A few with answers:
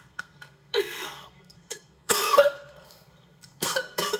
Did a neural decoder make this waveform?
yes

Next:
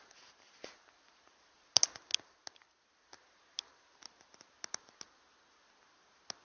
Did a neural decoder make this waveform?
no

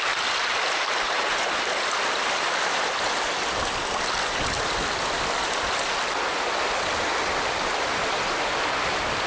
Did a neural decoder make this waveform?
no